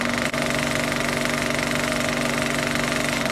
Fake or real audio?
real